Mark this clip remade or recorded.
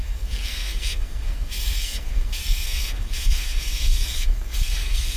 remade